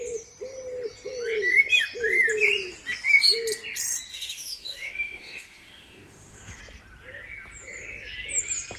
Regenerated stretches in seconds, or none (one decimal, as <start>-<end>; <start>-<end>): 4.1-6.6